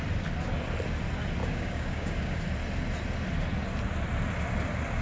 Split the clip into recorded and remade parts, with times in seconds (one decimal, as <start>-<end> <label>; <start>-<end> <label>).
0.0-1.4 recorded; 1.4-2.4 remade; 2.4-5.0 recorded